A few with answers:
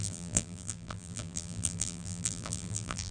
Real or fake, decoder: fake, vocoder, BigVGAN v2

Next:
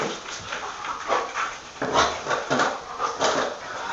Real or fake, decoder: fake, vocoder, BigVGAN v2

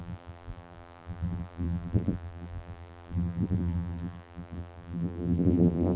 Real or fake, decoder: fake, vocoder, BigVGAN v2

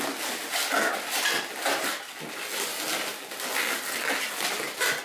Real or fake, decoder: real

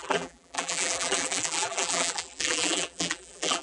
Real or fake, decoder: fake, vocoder, BigVGAN v2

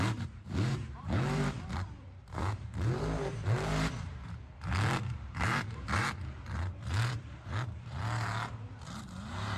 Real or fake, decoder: fake, vocoder, BigVGAN v2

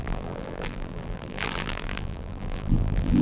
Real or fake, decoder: fake, vocoder, BigVGAN v2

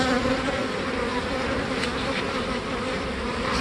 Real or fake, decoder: fake, vocoder, BigVGAN v2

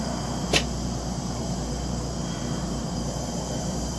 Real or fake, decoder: fake, vocoder, BigVGAN v2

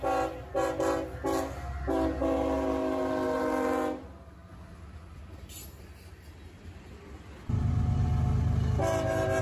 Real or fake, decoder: real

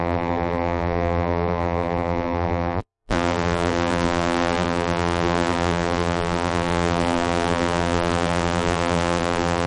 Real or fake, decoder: fake, vocoder, BigVGAN v2